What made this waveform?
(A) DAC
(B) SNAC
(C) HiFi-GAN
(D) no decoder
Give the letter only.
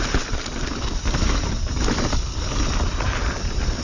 D